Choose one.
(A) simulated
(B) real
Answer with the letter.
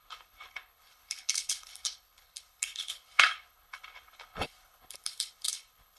A